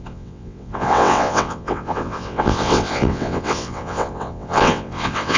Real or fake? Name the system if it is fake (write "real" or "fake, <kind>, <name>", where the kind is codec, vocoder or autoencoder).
fake, vocoder, WaveNeXt